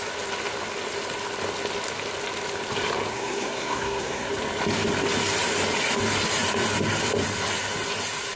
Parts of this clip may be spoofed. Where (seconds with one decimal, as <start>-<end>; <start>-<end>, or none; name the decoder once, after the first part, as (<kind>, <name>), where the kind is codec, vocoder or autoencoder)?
3.1-4.3 (codec, SNAC)